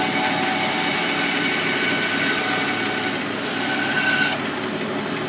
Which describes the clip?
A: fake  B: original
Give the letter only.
B